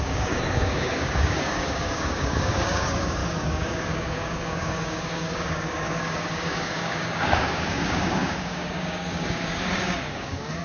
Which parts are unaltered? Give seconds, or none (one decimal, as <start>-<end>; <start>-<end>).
none